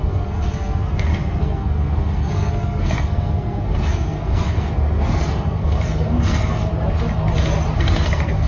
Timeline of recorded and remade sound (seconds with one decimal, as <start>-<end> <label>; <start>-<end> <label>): 0.0-6.7 remade; 6.7-7.8 recorded; 7.8-8.5 remade